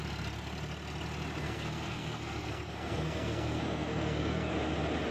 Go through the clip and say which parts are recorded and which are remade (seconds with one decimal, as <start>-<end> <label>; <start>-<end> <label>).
0.0-1.4 recorded; 1.4-4.5 remade; 4.5-5.1 recorded